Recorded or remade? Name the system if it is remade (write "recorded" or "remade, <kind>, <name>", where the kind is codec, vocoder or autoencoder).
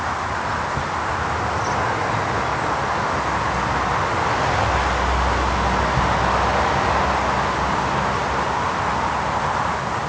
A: recorded